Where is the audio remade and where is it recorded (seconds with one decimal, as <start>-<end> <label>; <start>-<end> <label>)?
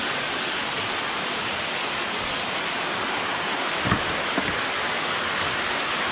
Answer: 0.0-6.1 recorded